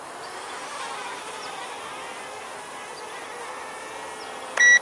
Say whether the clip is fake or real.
real